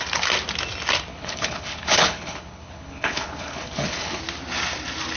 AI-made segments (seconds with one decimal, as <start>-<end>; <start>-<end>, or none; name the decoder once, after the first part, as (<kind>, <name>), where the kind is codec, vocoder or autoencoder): 1.1-4.2 (codec, HILCodec)